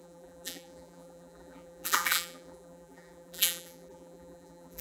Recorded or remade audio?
remade